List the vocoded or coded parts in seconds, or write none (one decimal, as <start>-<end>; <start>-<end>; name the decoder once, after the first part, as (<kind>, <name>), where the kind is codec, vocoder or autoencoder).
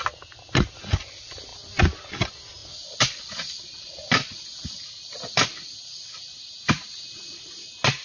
none